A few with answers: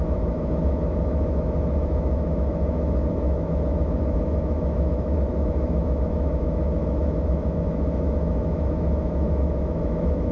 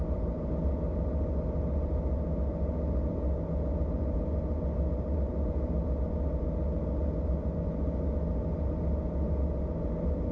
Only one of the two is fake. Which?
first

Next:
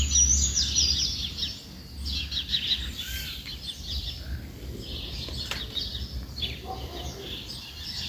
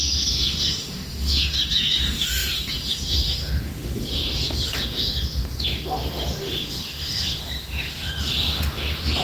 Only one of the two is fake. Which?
second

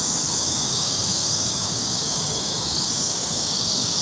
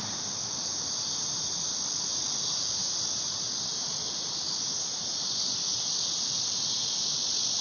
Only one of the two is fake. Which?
first